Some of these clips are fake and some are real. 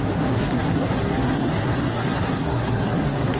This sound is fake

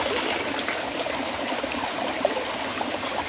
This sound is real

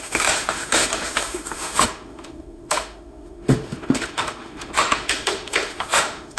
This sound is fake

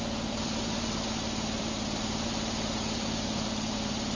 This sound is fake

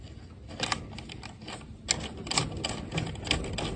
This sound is real